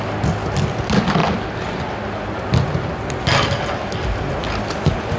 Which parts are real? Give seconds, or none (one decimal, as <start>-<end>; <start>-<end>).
0.0-5.2